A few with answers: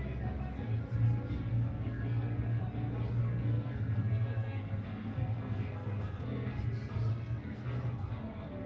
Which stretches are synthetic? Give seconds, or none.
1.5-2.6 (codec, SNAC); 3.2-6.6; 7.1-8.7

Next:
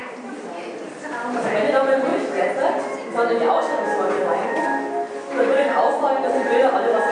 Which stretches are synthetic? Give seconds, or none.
none

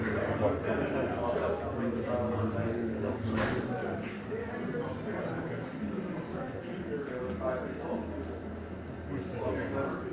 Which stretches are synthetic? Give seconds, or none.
2.6-4.5 (codec, DAC); 6.3-7.4

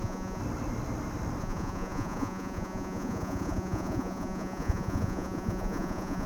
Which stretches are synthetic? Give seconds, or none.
0.0-0.4 (vocoder, Vocos); 1.4-6.3

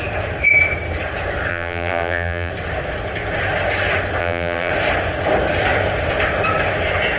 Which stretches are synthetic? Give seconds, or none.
1.5-2.5 (vocoder, BigVGAN v2); 4.2-4.7

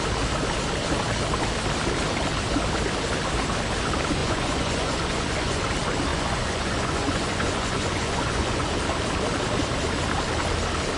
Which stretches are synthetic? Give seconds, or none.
4.2-5.6 (vocoder, Vocos); 6.1-8.7

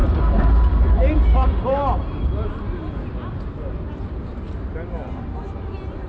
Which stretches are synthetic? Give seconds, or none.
0.0-3.7 (vocoder, BigVGAN v2)

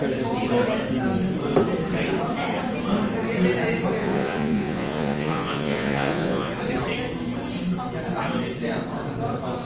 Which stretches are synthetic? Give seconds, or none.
4.0-6.5 (vocoder, Vocos)